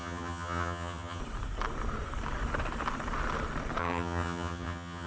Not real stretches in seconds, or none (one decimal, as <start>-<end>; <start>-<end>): 0.0-1.2; 3.8-5.1